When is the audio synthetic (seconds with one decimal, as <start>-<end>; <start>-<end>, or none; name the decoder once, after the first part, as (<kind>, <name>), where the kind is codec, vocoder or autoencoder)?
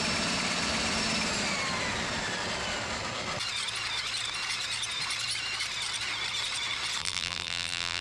7.0-8.0 (vocoder, BigVGAN v2)